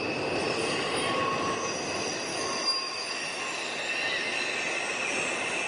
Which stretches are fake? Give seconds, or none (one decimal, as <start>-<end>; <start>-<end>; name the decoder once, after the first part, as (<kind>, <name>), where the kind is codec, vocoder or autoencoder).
2.3-3.5 (autoencoder, DAC-VAE)